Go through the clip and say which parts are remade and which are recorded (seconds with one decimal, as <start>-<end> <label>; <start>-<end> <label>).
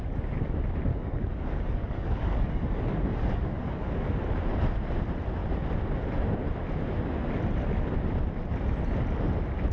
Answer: 0.0-0.9 recorded; 0.9-4.2 remade; 4.2-9.7 recorded